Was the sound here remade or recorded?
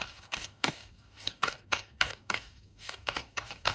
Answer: remade